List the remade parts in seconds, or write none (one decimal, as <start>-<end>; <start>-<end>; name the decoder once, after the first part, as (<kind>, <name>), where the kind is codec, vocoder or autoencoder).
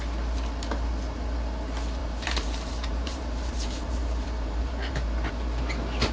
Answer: 2.0-5.3 (vocoder, BigVGAN v2)